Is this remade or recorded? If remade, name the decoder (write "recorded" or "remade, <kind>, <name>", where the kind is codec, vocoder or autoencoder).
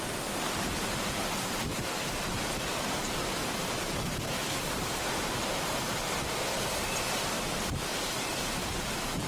remade, vocoder, BigVGAN v2